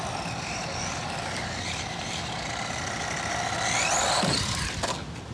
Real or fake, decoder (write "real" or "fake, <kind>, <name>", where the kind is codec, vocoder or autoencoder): real